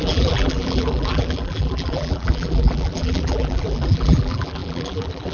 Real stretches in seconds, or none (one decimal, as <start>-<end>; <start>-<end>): none